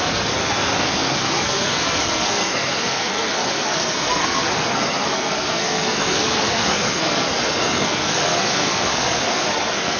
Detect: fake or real fake